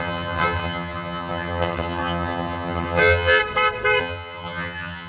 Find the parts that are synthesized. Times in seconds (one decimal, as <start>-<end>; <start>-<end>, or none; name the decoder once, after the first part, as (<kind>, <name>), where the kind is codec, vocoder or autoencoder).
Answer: 0.0-3.4 (vocoder, HiFi-GAN); 4.0-5.1